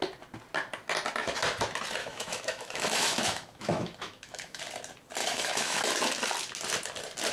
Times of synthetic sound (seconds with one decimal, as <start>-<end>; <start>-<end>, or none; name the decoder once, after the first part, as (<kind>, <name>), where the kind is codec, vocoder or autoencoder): 2.0-4.6 (autoencoder, DAC-VAE); 5.2-5.8